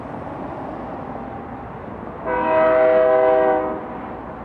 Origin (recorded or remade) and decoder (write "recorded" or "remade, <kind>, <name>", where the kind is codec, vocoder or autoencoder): recorded